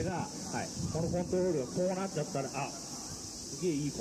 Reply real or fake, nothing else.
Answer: real